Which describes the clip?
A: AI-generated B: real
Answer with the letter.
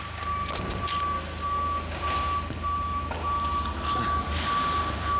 B